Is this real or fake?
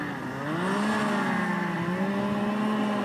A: real